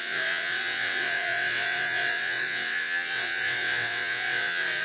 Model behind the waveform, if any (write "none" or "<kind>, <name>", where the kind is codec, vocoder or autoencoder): vocoder, WaveNeXt